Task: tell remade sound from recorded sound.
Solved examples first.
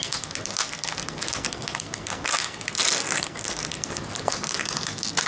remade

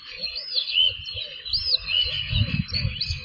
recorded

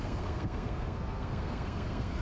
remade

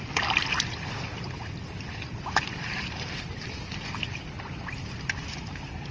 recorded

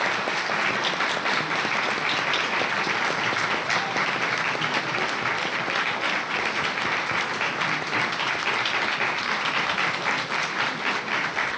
recorded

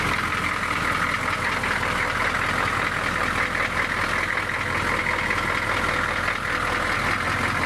recorded